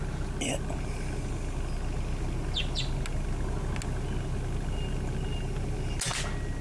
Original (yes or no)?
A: yes